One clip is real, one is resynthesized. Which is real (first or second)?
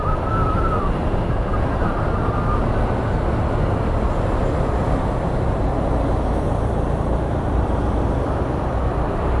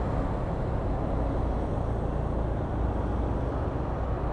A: second